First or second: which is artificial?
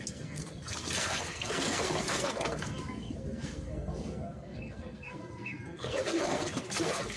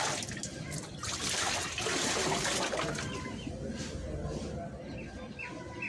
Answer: first